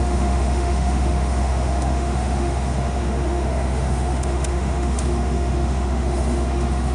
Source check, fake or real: fake